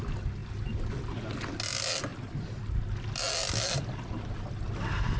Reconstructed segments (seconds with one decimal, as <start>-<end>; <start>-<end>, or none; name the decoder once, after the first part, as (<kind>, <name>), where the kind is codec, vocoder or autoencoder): none